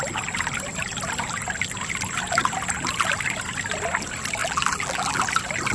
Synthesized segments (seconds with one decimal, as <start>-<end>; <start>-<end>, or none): 4.4-5.2